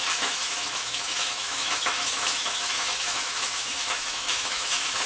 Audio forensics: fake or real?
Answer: fake